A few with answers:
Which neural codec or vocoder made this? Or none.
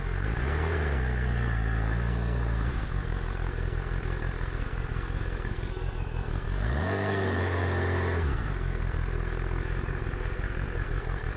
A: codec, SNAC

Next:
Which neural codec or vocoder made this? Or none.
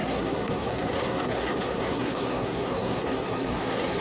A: codec, SNAC